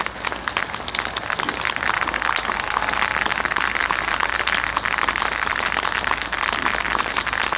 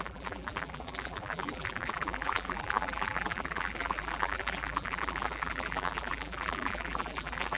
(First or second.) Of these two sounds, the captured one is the first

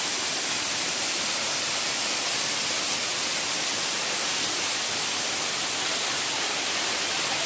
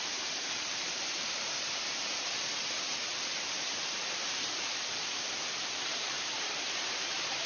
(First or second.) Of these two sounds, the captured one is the first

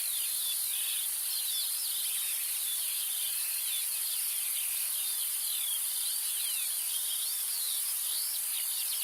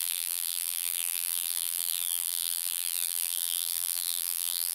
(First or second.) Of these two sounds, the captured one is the first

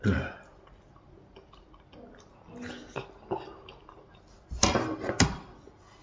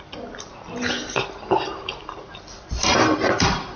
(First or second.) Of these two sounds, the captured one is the first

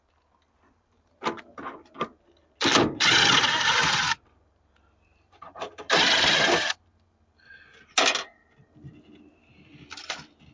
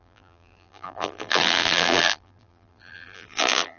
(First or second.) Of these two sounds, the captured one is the first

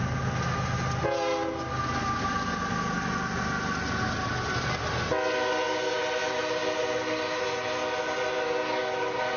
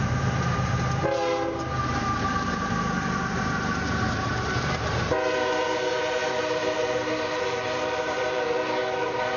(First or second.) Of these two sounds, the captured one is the first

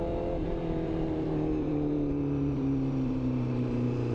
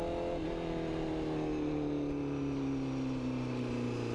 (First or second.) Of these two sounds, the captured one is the second